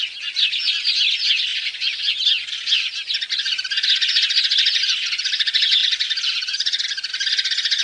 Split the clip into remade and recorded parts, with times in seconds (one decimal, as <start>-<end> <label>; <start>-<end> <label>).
0.0-1.5 recorded; 1.5-2.1 remade; 2.1-5.8 recorded; 5.8-7.1 remade; 7.1-7.8 recorded